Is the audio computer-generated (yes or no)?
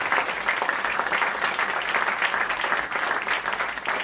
no